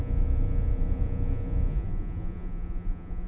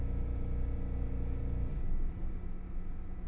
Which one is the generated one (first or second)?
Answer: first